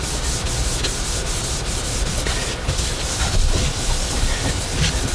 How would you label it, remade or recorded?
recorded